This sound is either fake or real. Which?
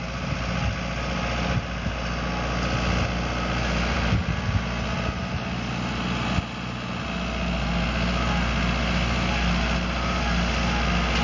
real